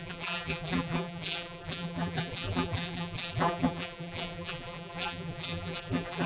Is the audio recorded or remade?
remade